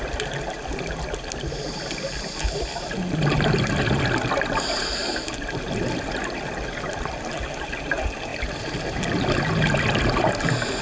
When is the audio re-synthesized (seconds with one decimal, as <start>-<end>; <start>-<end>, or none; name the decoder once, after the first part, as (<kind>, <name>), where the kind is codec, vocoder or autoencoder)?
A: none